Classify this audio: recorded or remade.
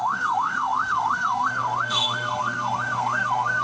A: remade